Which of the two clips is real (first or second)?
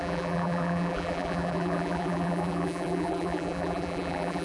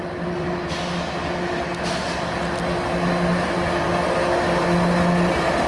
second